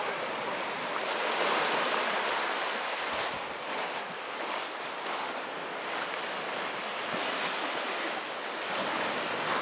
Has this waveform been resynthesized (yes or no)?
no